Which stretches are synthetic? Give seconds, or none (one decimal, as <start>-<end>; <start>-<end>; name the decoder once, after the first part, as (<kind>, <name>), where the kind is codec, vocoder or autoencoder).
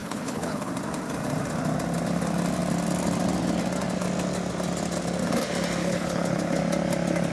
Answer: 0.0-0.7 (codec, HILCodec); 5.8-6.6